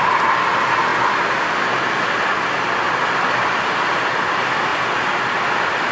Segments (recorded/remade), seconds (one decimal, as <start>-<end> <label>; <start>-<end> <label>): 0.0-5.9 recorded